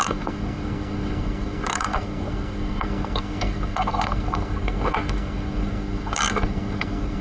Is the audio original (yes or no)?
no